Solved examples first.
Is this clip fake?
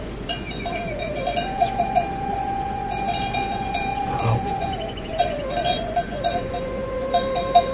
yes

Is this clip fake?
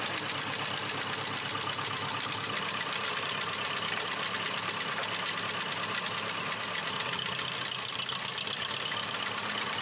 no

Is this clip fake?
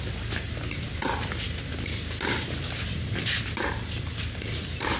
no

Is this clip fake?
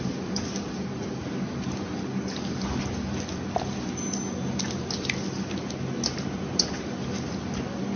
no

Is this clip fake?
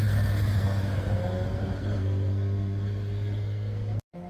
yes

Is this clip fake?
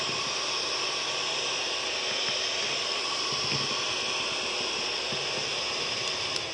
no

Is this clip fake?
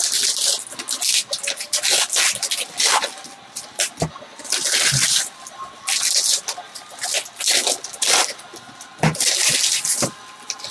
no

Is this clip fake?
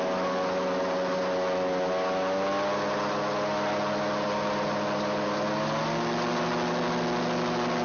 no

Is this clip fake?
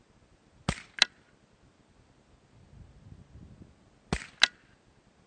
no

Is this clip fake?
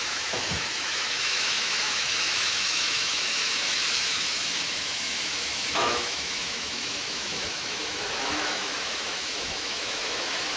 yes